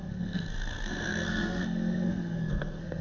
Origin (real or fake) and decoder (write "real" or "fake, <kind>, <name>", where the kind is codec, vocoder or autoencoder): fake, codec, SNAC